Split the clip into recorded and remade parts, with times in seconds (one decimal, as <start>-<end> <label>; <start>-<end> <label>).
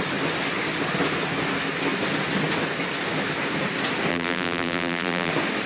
0.0-4.1 recorded; 4.1-5.3 remade; 5.3-5.7 recorded